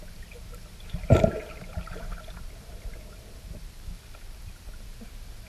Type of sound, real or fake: fake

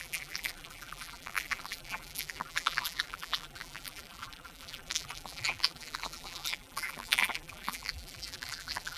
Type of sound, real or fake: fake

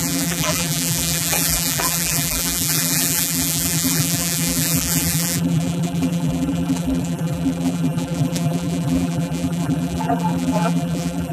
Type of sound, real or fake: fake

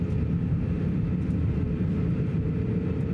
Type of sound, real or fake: real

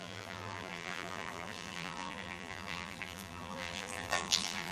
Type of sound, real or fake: fake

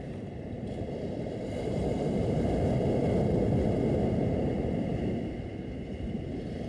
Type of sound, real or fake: fake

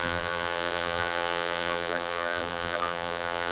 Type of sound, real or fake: fake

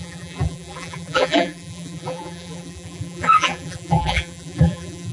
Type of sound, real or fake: fake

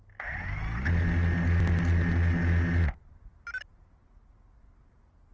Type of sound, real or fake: real